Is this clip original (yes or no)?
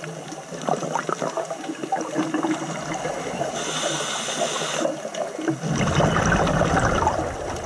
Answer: yes